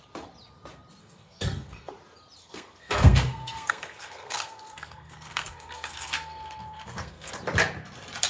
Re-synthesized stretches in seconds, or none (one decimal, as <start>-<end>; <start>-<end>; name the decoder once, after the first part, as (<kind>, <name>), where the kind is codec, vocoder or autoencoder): 1.0-1.9 (codec, SNAC); 2.4-7.3